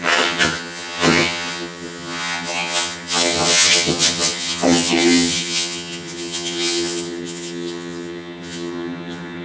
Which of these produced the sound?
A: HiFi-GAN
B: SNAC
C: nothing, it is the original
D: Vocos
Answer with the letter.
A